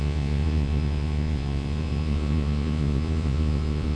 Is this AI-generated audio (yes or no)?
yes